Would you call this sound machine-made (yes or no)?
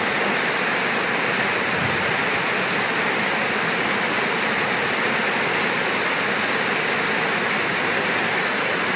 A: no